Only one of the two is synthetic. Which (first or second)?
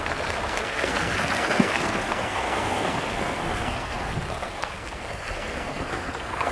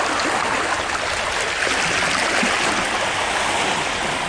first